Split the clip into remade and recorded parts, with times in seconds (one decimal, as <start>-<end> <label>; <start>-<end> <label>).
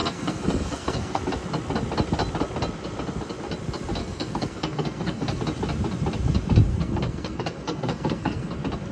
0.0-1.2 remade; 1.2-4.0 recorded; 4.0-5.4 remade; 5.4-6.7 recorded; 6.7-8.5 remade; 8.5-8.9 recorded